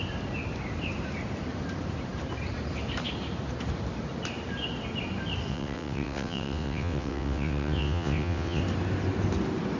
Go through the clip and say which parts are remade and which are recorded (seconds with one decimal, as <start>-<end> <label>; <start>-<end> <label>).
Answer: 0.0-5.5 recorded; 5.5-8.6 remade; 8.6-9.8 recorded